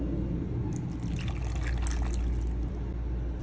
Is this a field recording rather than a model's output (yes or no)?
yes